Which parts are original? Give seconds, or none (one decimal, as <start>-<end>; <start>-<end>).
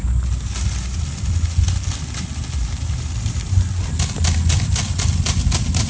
0.0-5.9